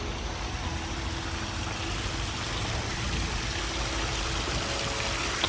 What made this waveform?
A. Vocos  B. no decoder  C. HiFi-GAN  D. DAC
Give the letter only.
B